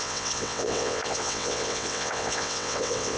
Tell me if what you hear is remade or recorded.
remade